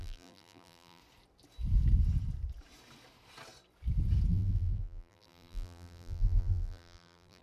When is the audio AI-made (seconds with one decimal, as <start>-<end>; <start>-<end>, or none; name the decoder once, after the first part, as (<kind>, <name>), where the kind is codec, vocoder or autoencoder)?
0.0-1.0 (vocoder, BigVGAN v2); 4.3-7.4